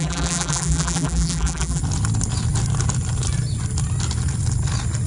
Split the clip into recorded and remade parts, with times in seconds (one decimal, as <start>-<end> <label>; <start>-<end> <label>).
0.0-1.8 remade; 1.8-5.1 recorded